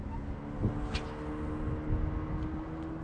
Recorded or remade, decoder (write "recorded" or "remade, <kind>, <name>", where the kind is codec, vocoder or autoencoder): recorded